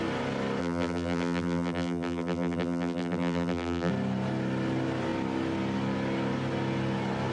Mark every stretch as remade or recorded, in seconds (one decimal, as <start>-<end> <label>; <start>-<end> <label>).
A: 0.0-0.6 recorded; 0.6-3.9 remade; 3.9-7.3 recorded